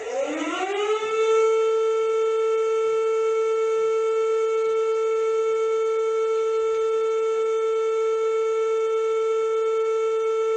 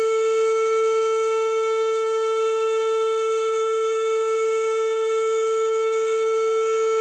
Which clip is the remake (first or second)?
second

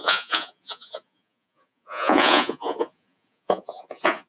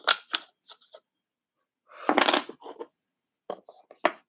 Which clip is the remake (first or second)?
first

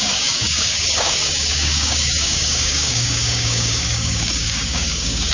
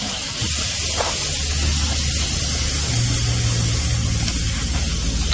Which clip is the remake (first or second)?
first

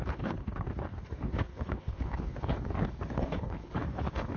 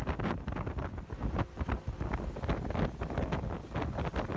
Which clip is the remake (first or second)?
first